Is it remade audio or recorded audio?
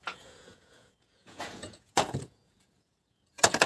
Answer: remade